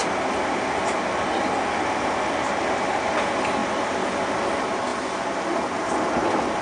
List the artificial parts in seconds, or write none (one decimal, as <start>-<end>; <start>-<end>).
none